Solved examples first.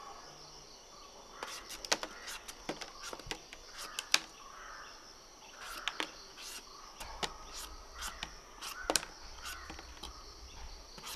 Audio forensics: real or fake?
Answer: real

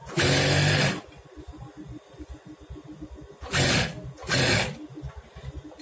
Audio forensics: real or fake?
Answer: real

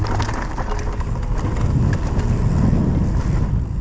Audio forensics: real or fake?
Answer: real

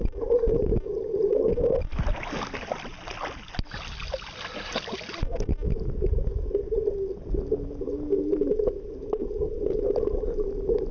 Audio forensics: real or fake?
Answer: real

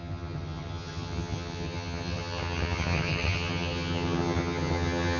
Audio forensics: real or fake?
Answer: fake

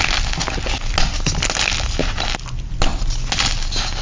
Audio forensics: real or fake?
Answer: real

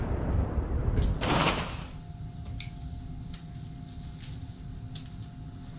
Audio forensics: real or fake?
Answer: real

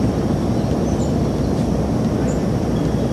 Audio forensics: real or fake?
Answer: real